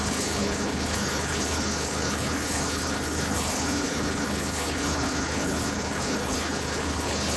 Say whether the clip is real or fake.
fake